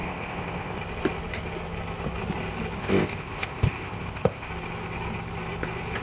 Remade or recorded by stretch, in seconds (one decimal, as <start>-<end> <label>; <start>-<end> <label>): 0.0-0.8 remade; 0.8-2.8 recorded; 2.8-4.5 remade; 4.5-6.0 recorded

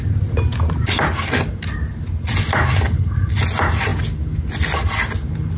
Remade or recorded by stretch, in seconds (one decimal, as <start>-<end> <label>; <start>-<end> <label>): 0.0-5.6 recorded